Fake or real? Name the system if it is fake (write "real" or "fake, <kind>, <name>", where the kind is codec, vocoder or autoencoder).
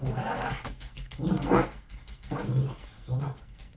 fake, codec, SNAC